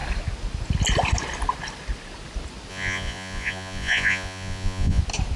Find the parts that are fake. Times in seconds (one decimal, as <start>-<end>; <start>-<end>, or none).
2.7-5.0